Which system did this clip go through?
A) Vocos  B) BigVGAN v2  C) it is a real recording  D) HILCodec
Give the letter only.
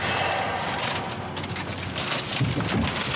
C